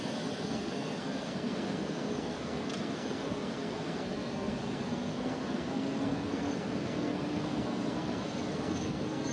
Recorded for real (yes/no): no